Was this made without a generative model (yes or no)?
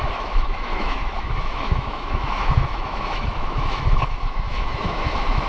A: no